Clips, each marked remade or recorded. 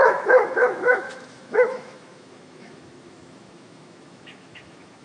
remade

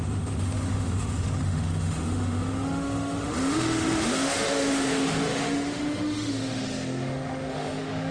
remade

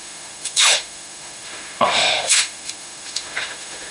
remade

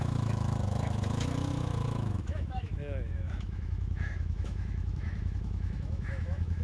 remade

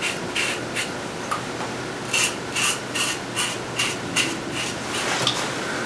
recorded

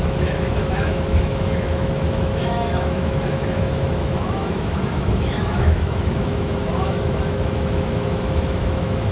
remade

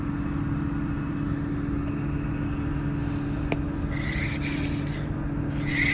recorded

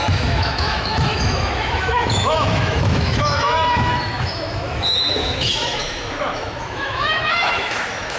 remade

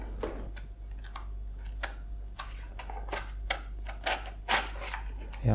recorded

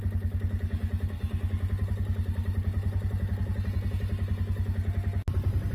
recorded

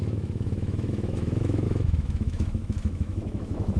remade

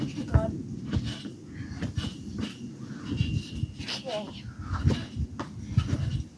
recorded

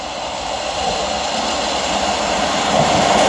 recorded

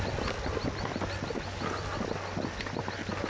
recorded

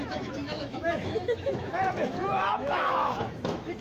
remade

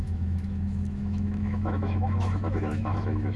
remade